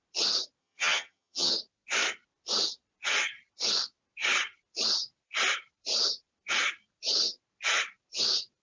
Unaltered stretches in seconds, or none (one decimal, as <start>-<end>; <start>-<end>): 0.0-0.6; 1.5-8.6